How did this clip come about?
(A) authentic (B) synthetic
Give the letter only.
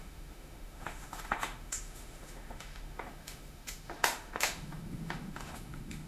B